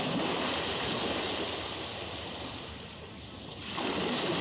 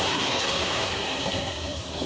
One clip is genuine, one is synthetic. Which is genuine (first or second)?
first